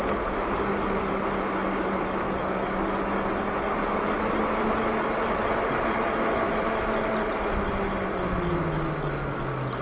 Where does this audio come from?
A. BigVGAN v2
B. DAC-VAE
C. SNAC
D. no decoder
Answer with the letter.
D